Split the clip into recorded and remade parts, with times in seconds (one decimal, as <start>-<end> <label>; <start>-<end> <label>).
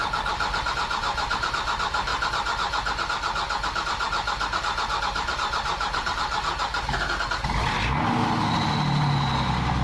0.0-2.1 remade; 2.1-5.0 recorded; 5.0-6.7 remade; 6.7-8.5 recorded; 8.5-9.8 remade